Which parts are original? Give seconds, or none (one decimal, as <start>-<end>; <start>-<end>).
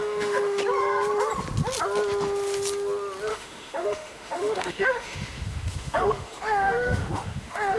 0.6-3.3